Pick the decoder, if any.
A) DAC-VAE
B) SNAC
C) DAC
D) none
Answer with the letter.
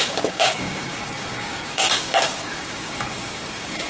C